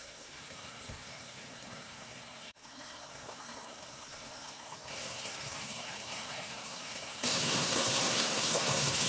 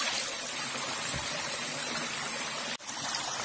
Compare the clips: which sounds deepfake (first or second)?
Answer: first